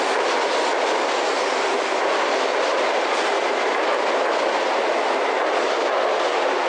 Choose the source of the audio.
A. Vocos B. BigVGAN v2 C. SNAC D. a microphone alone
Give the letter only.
D